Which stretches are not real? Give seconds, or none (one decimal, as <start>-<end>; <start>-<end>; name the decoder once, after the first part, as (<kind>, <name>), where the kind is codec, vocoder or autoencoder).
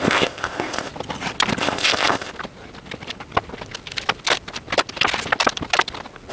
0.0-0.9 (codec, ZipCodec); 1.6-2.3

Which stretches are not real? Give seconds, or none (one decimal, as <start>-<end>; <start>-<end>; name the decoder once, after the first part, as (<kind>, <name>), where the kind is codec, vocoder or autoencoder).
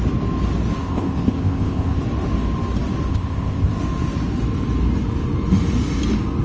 0.8-2.0 (codec, ZipCodec); 3.1-3.7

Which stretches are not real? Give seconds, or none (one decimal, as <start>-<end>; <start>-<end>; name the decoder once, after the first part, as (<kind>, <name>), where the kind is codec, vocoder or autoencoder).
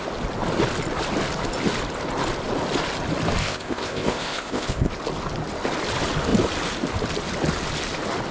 3.4-4.9 (codec, ZipCodec)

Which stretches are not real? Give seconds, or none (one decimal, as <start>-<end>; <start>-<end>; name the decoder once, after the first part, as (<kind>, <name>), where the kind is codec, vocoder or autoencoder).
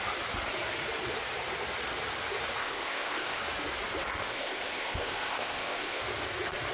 2.6-3.4 (codec, ZipCodec); 4.2-6.0